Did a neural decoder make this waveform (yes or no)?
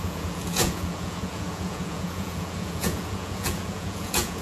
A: yes